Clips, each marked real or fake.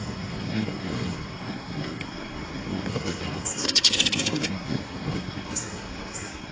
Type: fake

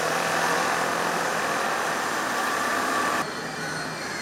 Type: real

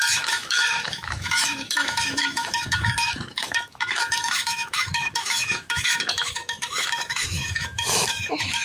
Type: fake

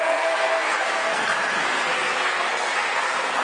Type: fake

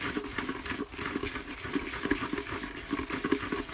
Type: real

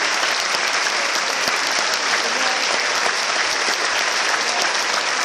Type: real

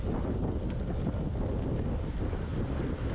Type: real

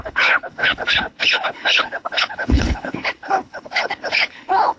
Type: fake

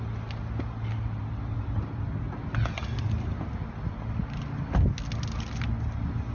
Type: real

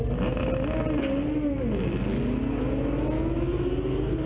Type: real